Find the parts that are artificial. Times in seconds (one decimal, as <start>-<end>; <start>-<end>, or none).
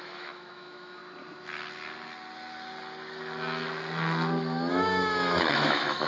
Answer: 0.0-1.0; 4.7-6.1